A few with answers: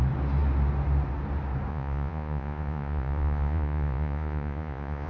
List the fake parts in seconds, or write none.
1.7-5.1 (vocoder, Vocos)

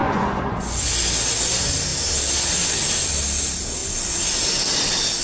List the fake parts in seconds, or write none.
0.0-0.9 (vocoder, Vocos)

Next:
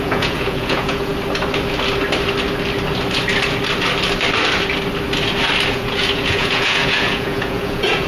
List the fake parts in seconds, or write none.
0.0-1.1 (vocoder, Vocos); 5.7-8.1

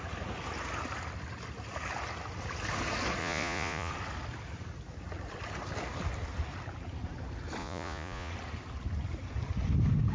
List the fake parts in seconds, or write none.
3.2-3.9 (vocoder, Vocos); 7.6-8.3